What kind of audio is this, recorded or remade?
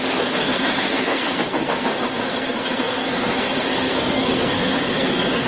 remade